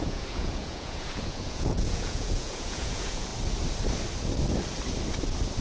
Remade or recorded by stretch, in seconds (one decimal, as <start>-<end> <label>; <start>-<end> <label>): 0.0-3.3 remade; 3.3-5.6 recorded